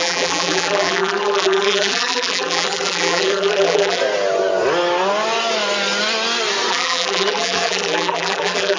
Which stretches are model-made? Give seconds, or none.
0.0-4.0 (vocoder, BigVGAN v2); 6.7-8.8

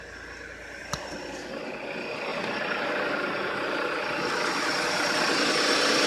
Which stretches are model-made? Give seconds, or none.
none

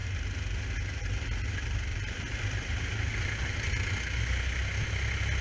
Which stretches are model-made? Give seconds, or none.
1.9-3.7 (vocoder, BigVGAN v2)

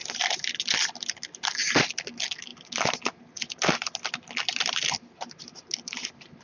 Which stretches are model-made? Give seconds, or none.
none